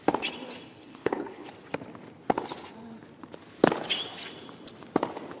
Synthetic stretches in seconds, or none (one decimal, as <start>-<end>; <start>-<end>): 0.8-1.5